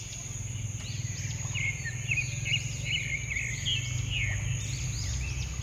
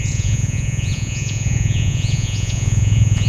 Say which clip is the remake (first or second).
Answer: second